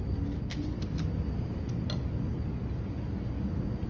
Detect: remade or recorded recorded